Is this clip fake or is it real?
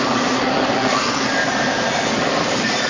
real